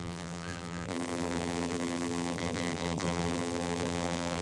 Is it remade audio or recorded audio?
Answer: remade